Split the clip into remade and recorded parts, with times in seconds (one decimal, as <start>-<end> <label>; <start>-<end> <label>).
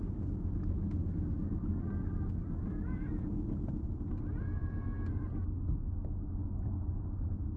0.0-7.6 recorded